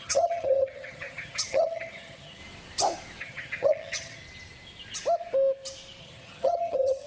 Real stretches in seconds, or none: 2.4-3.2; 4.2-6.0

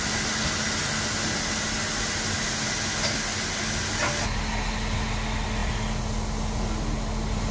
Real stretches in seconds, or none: 0.0-7.5

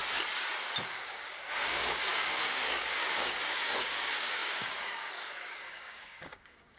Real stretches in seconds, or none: 0.0-0.9

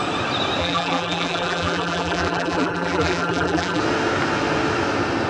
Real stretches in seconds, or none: 0.0-0.6; 3.8-5.3